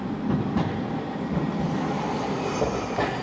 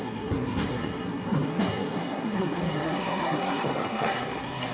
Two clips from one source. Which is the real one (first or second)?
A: first